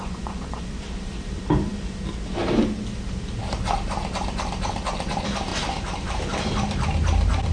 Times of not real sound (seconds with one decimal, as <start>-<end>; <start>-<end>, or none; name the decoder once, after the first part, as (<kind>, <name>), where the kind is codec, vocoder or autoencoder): 0.0-0.7 (vocoder, Vocos)